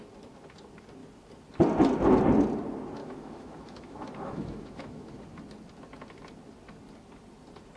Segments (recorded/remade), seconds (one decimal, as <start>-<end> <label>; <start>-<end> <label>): 0.0-3.0 recorded; 3.0-5.2 remade; 5.2-7.8 recorded